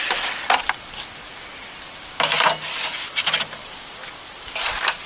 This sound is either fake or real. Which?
real